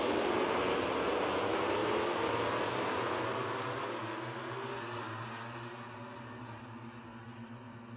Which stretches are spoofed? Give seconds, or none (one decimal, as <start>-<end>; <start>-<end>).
none